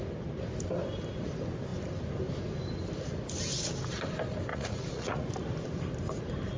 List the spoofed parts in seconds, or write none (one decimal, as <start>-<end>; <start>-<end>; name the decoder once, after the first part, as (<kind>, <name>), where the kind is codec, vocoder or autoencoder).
4.5-5.3 (vocoder, Vocos)